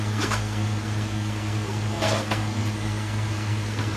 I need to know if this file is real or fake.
fake